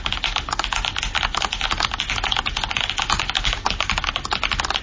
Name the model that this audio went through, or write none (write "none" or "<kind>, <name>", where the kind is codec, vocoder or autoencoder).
none